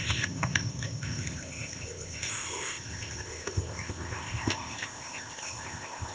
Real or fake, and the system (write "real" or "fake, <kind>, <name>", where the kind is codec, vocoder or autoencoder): fake, codec, ZipCodec